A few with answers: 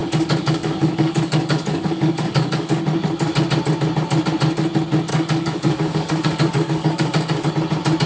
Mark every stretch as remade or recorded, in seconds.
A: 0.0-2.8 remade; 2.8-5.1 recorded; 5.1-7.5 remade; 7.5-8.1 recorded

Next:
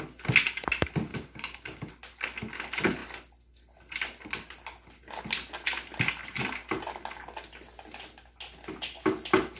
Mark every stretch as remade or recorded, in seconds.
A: 0.0-1.1 recorded; 1.1-1.9 remade; 1.9-9.6 recorded

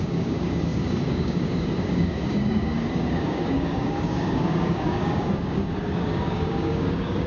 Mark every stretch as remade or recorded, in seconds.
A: 0.0-7.3 remade

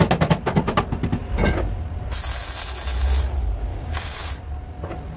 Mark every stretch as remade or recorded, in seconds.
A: 0.0-3.7 recorded; 3.7-4.3 remade; 4.3-5.2 recorded